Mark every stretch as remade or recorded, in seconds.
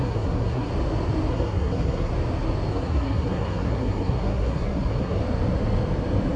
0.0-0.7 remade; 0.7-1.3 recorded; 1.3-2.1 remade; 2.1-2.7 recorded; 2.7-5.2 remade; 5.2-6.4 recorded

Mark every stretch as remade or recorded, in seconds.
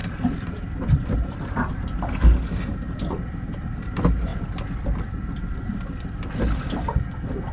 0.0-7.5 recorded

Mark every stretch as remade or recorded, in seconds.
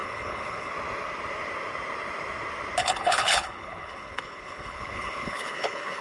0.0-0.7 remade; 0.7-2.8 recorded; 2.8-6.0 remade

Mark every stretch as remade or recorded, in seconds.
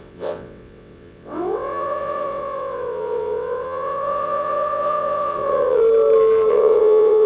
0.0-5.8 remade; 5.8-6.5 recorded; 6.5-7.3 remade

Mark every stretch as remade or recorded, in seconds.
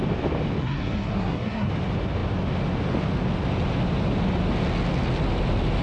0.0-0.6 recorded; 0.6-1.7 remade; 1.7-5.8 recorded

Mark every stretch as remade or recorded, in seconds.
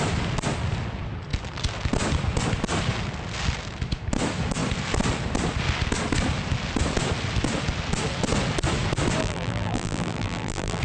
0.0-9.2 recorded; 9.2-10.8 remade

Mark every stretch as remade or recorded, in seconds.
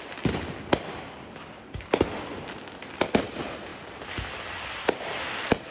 0.0-5.7 recorded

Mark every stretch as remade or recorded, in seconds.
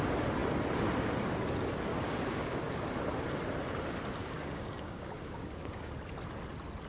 0.0-1.9 recorded; 1.9-2.6 remade; 2.6-4.2 recorded; 4.2-5.9 remade; 5.9-6.9 recorded